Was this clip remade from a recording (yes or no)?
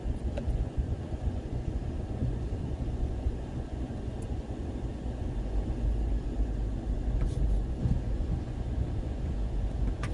yes